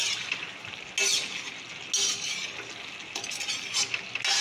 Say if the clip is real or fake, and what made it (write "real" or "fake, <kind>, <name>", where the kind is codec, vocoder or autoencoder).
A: real